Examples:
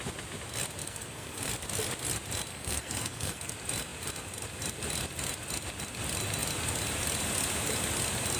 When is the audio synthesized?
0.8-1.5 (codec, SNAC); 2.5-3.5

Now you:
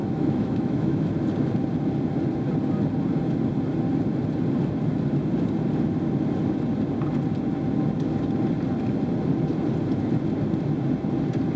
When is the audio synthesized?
0.0-1.1 (autoencoder, DAC-VAE)

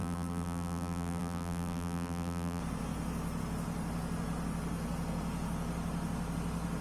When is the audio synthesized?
0.0-2.6 (vocoder, BigVGAN v2)